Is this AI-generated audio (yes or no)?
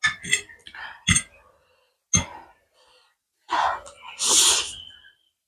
no